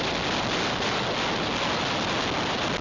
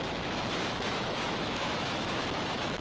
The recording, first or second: first